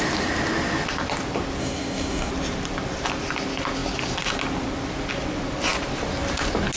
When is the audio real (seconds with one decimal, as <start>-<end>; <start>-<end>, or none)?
0.0-1.6; 2.3-6.8